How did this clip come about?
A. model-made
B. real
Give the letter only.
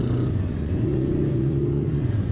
A